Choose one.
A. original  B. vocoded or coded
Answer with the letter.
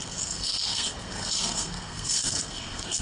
B